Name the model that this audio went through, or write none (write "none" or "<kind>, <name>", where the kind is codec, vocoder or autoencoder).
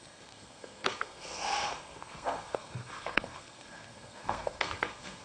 codec, SNAC